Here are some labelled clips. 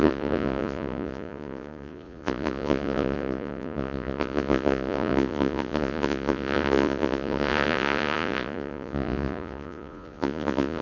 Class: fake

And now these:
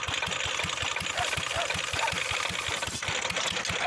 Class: real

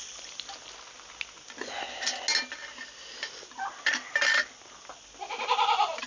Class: real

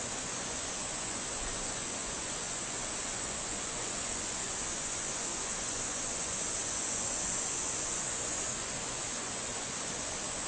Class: fake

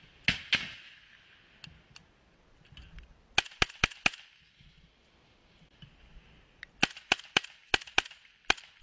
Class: real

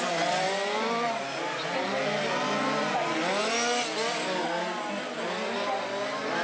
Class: real